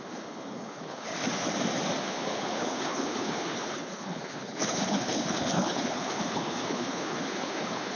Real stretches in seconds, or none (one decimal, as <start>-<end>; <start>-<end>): 1.1-2.0